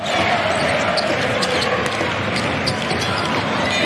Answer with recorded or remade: recorded